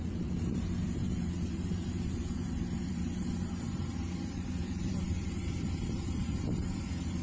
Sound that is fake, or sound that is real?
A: fake